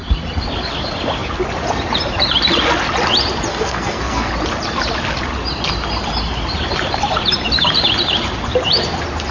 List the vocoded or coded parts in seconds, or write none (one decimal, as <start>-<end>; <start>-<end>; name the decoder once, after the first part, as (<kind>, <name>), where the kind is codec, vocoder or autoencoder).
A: 3.5-4.3 (codec, SNAC)

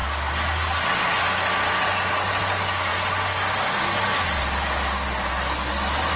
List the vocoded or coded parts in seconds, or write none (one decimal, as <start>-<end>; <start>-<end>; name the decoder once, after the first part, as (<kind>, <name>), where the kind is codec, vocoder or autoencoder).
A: none

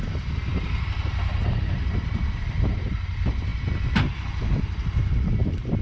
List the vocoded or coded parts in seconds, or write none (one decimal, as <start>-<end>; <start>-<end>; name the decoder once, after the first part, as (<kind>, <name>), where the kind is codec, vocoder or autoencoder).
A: none

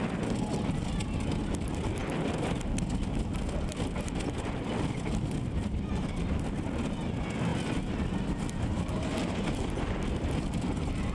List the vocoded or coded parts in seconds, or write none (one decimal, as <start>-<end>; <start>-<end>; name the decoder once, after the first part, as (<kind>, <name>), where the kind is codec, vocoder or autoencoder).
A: none

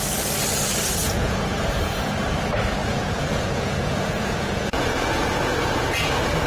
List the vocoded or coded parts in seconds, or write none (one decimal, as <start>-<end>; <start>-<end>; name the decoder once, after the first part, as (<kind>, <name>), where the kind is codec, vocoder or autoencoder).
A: 1.0-2.0 (vocoder, Vocos); 2.8-6.1

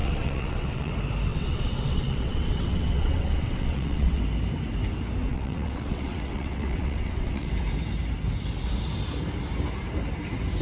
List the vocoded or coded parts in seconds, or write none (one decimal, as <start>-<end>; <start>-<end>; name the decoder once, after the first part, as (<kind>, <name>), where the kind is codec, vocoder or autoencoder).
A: 0.0-0.9 (vocoder, WaveNeXt); 1.3-4.2; 5.3-7.5